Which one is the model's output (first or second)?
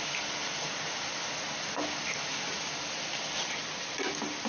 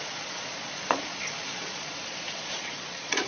second